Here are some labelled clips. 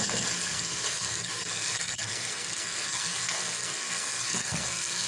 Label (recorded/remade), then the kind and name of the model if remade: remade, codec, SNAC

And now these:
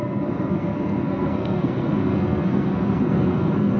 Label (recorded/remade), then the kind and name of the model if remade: remade, codec, SNAC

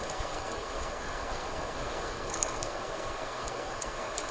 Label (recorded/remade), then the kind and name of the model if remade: remade, codec, SNAC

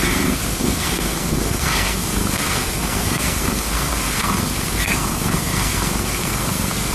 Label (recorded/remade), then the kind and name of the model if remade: remade, codec, SNAC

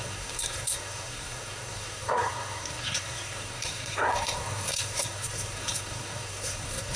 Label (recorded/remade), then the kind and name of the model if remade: remade, codec, SNAC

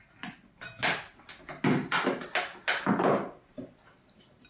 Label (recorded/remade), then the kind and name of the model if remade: recorded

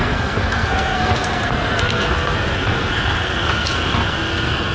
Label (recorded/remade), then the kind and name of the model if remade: remade, codec, SNAC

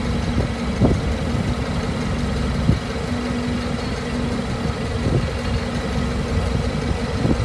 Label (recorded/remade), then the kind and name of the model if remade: recorded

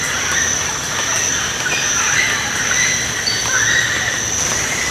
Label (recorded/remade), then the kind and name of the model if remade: recorded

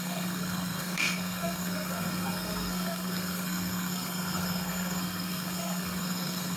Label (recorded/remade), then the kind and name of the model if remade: remade, codec, SNAC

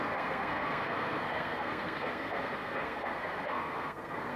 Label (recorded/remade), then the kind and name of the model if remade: remade, codec, SNAC